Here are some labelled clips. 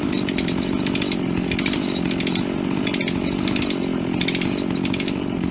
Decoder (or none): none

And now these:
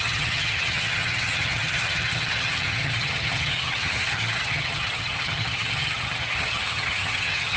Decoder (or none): vocoder, HiFi-GAN